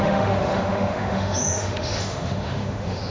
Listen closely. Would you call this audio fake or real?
fake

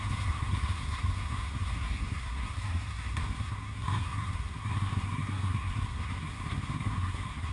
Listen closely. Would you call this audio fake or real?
fake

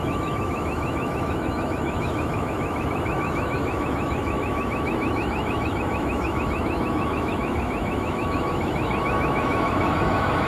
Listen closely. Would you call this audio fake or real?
fake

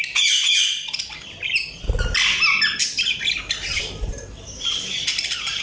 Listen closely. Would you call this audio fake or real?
real